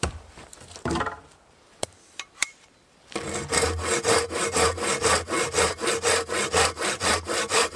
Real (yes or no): no